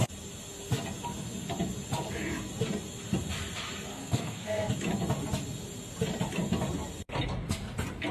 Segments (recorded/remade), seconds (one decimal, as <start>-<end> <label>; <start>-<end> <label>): 0.0-3.9 recorded; 3.9-4.7 remade; 4.7-8.1 recorded